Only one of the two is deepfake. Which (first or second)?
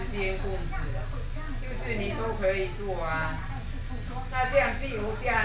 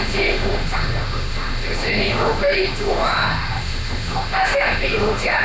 second